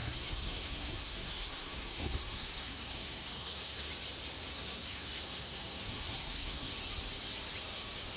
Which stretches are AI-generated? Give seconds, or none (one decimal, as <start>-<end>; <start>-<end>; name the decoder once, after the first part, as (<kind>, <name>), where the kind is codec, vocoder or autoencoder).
0.0-3.9 (codec, SNAC); 4.5-6.7